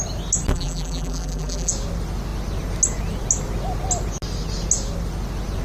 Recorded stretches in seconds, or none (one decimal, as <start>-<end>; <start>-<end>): 0.0-0.5; 1.7-5.6